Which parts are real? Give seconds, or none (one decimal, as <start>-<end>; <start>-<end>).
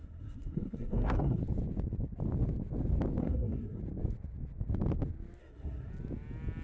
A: 1.4-3.2; 3.8-5.4; 5.9-6.6